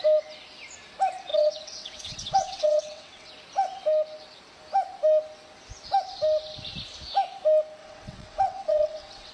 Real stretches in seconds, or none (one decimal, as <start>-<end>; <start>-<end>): 0.0-1.3; 3.3-7.8